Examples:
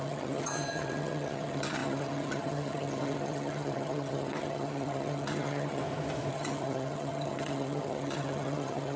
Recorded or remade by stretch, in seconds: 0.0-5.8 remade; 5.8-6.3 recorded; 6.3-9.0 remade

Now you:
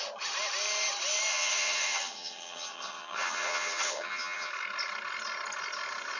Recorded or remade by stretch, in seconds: 0.0-1.3 recorded; 1.3-4.5 remade; 4.5-6.2 recorded

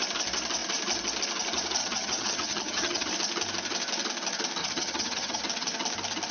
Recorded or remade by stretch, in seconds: 0.0-1.8 recorded; 1.8-3.1 remade; 3.1-4.6 recorded; 4.6-5.4 remade; 5.4-6.3 recorded

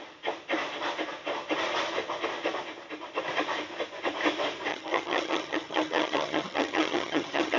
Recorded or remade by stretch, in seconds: 0.0-4.7 recorded; 4.7-7.6 remade

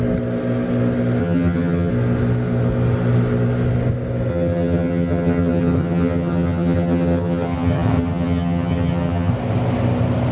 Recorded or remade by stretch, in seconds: 0.0-1.2 recorded; 1.2-1.9 remade; 1.9-4.3 recorded; 4.3-9.3 remade; 9.3-10.3 recorded

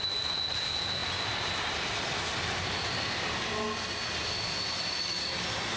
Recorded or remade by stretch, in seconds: 0.0-5.8 recorded

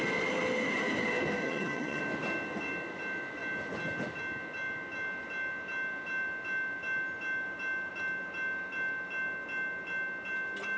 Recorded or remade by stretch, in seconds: 0.0-1.4 recorded; 1.4-2.0 remade; 2.0-10.8 recorded